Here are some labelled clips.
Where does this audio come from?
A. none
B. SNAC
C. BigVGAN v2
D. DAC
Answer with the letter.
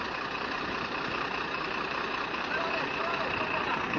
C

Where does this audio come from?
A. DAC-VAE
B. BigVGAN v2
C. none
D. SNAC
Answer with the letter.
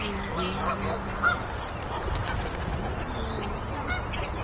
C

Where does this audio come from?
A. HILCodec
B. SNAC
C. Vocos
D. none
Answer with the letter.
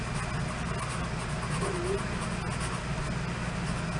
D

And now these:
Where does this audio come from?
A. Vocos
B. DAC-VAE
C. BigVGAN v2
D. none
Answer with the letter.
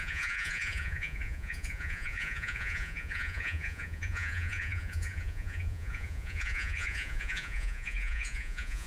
A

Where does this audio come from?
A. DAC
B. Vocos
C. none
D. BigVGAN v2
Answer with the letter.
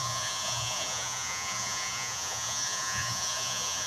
B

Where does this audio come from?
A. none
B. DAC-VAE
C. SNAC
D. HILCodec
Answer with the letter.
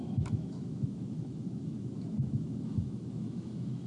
B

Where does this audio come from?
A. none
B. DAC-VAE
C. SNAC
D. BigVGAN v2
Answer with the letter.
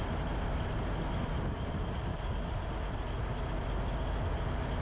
A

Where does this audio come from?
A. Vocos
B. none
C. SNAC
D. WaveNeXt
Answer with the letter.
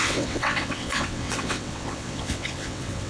D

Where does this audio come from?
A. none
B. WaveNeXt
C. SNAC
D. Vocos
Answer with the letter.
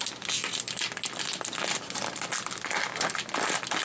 A